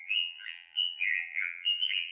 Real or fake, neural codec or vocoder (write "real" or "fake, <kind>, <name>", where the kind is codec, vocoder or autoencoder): fake, vocoder, BigVGAN v2